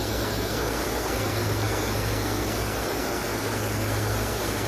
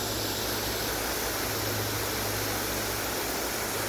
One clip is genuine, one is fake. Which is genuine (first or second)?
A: second